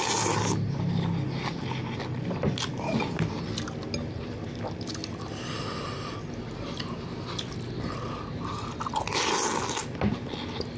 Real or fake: real